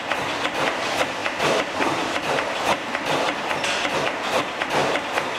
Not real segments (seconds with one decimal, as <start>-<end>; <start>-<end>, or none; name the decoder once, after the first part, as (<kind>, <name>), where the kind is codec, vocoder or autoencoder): 1.2-4.4 (vocoder, BigVGAN v2)